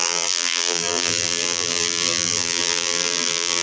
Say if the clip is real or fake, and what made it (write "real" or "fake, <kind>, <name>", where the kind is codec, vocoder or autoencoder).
fake, vocoder, BigVGAN v2